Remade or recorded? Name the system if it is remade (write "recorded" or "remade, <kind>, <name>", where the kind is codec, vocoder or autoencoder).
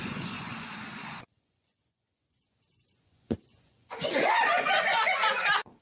remade, vocoder, Vocos